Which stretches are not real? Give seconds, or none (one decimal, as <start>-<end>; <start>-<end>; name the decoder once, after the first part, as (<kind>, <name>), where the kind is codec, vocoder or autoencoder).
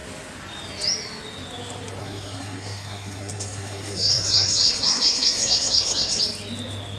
2.0-6.2 (codec, SNAC)